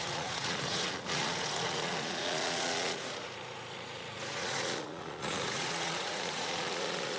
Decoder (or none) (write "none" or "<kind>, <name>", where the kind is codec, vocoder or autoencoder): vocoder, Vocos